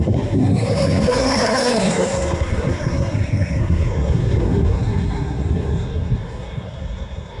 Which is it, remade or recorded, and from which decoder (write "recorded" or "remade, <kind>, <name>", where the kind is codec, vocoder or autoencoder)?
remade, codec, SNAC